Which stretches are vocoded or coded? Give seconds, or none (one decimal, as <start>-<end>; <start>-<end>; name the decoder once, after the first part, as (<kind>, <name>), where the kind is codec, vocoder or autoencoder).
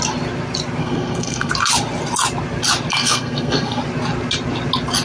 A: 0.8-1.5 (codec, SNAC); 2.9-3.8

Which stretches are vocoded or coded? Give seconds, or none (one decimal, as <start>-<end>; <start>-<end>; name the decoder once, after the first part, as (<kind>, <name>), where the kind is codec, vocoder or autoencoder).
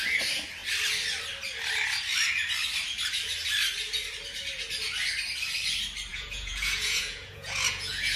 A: 6.1-8.2 (vocoder, Vocos)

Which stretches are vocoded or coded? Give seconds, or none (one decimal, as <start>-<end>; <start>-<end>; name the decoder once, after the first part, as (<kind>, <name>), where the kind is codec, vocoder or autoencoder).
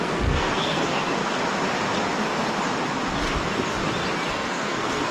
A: 0.0-1.2 (codec, SNAC); 4.3-5.1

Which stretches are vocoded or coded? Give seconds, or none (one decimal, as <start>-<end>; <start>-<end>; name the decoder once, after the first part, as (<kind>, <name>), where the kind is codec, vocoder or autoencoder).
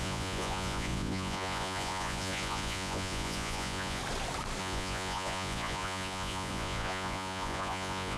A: 0.0-4.0 (vocoder, Vocos); 4.6-8.2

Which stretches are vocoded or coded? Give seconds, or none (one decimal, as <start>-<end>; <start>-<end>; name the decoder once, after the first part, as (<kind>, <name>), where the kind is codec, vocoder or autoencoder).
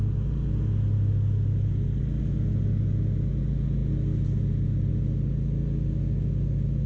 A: none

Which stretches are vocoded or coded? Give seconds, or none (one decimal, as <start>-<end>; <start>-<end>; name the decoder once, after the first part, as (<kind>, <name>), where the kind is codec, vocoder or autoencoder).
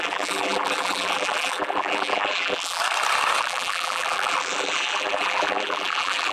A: 0.0-2.8 (vocoder, BigVGAN v2); 3.4-6.3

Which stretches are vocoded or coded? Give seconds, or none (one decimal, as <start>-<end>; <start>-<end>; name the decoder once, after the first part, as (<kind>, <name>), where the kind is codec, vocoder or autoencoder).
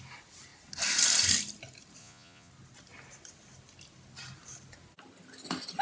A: 2.0-2.5 (vocoder, Vocos)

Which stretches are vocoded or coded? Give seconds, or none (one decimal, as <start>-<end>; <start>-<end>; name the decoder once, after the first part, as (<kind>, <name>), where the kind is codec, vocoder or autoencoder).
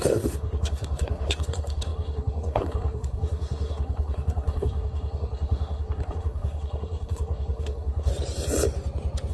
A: 0.0-8.1 (codec, SNAC)